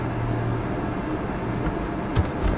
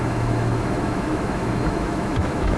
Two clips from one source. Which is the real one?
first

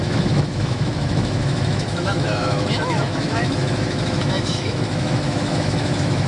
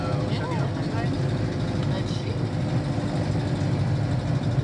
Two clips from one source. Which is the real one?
second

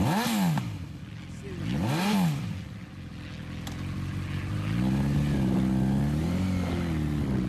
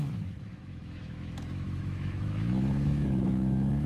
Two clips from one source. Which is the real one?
first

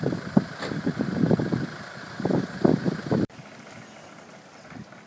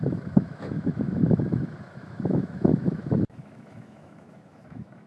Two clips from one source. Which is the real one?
first